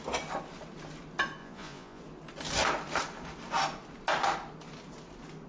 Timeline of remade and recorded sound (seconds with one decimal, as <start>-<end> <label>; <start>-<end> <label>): 0.0-1.4 recorded; 1.4-2.0 remade; 2.0-5.5 recorded